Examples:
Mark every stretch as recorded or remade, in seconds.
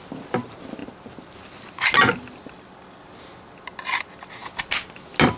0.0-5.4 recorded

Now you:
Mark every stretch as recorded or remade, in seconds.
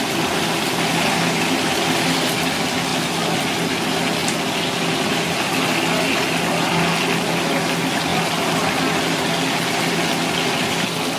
0.0-8.1 recorded; 8.1-8.8 remade; 8.8-11.2 recorded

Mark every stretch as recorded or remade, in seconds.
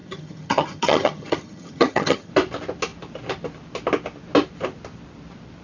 0.0-2.3 remade; 2.3-5.6 recorded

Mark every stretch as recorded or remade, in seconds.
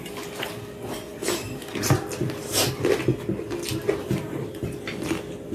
0.0-5.5 recorded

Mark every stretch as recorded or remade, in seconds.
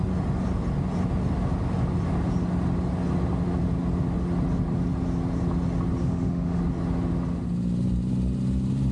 0.0-6.0 recorded; 6.0-6.6 remade; 6.6-8.9 recorded